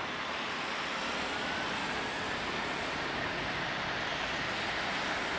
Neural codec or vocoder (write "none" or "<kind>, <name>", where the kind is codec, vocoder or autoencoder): none